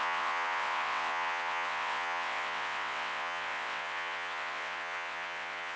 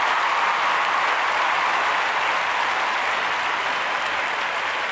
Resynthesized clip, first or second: first